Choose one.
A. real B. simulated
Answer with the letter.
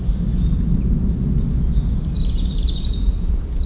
A